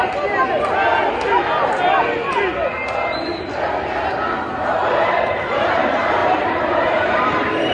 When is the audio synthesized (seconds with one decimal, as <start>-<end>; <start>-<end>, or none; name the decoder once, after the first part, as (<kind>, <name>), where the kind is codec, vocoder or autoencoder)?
4.5-5.2 (vocoder, BigVGAN v2); 6.2-7.7